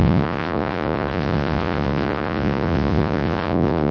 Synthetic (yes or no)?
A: yes